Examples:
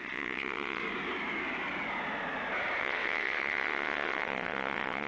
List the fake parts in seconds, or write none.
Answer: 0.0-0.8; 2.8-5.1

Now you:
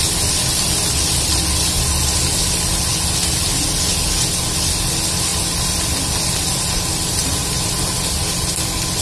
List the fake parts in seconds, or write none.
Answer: 0.5-1.4; 5.3-6.9

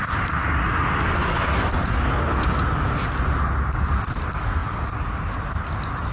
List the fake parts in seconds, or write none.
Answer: none

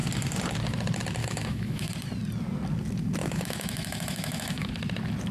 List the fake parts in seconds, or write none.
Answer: 1.2-1.9; 3.2-4.7

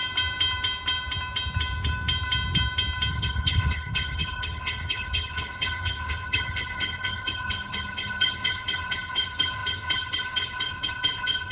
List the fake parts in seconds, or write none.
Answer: 3.1-11.5